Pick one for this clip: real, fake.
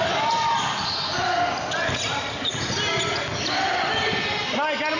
real